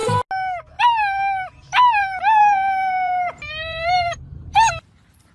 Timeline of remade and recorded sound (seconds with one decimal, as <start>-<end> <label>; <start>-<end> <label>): 0.0-2.0 recorded; 2.0-4.7 remade; 4.7-5.3 recorded